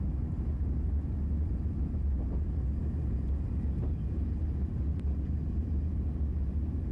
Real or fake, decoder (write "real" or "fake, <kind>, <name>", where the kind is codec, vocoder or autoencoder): real